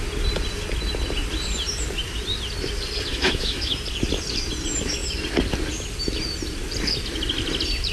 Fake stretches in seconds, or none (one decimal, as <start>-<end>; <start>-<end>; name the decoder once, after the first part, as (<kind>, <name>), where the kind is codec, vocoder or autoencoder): 3.1-3.7 (autoencoder, DAC-VAE)